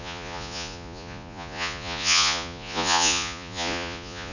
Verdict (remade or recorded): remade